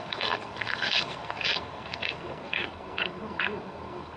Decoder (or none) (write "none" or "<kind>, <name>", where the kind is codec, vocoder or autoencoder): codec, SNAC